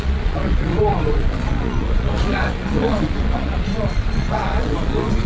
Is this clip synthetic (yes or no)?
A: yes